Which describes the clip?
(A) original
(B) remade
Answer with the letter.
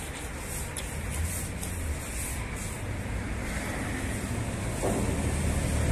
A